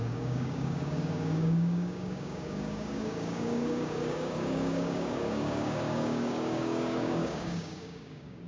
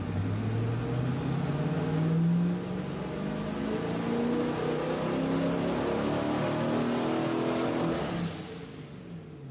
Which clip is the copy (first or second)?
first